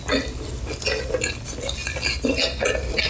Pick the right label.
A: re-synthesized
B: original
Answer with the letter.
B